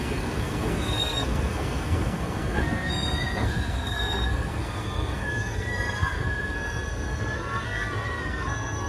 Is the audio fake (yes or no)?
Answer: yes